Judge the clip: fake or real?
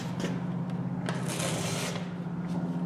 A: real